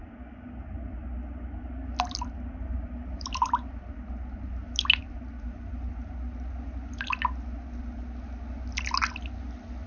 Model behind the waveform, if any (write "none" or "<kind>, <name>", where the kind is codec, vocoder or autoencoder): none